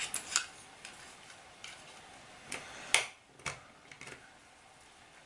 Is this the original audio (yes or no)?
yes